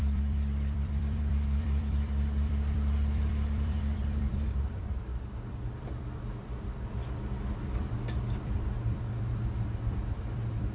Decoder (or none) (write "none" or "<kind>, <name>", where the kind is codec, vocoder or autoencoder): vocoder, BigVGAN v2